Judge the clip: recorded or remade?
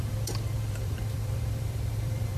remade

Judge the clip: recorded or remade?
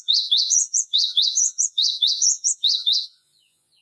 remade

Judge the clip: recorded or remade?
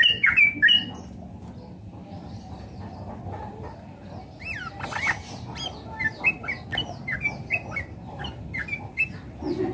recorded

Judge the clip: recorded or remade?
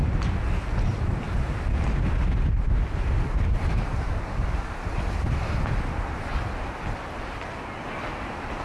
recorded